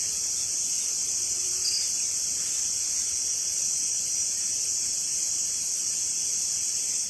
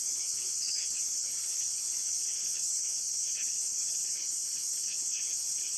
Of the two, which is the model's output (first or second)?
second